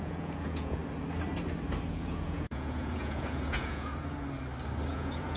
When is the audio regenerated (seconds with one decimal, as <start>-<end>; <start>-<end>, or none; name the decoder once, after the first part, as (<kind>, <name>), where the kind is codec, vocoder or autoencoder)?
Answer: 0.0-0.8 (vocoder, Vocos); 1.9-3.9; 4.9-5.4

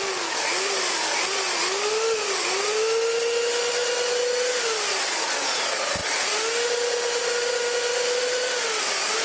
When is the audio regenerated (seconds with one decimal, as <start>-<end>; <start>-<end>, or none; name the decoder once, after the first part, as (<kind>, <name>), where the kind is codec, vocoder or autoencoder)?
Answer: none

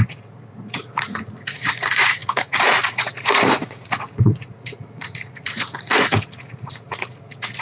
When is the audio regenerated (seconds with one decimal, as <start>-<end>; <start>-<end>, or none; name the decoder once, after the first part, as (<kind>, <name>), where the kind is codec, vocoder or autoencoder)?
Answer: 0.0-7.6 (vocoder, Vocos)

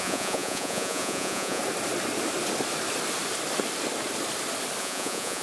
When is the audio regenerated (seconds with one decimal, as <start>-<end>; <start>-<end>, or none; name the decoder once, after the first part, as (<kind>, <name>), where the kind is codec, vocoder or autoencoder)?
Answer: 0.0-1.6 (vocoder, Vocos); 4.8-5.4

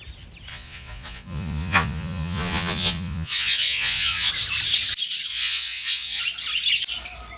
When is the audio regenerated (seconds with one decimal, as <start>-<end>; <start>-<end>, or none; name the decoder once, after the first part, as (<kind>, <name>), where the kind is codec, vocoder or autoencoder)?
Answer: 0.5-4.3 (vocoder, Vocos); 5.3-6.2

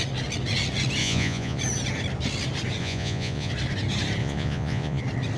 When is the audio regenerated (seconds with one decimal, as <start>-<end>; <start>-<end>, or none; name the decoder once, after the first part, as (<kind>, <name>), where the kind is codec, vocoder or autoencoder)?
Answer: 1.0-1.6 (vocoder, Vocos); 2.8-3.5; 4.2-5.0